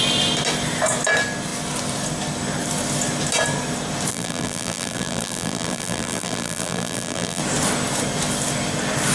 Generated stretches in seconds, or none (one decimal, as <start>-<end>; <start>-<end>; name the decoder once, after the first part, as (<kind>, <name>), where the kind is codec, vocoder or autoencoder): 4.1-7.4 (vocoder, BigVGAN v2)